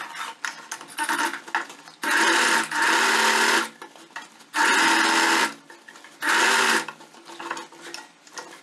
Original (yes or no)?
yes